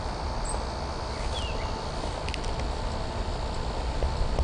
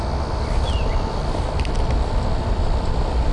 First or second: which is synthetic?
second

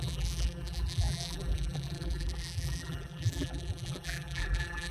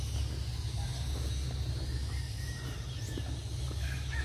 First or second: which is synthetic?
first